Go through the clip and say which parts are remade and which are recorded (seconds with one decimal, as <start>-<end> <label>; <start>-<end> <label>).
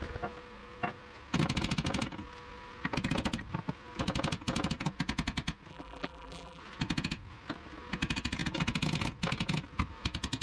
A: 0.0-5.7 recorded; 5.7-6.6 remade; 6.6-10.4 recorded